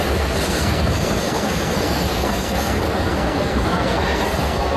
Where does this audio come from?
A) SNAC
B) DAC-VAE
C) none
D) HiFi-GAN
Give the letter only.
A